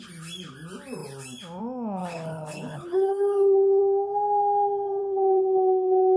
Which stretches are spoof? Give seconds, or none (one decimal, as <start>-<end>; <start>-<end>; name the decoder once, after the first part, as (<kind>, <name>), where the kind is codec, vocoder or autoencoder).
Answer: 2.0-3.8 (codec, HILCodec); 5.0-6.2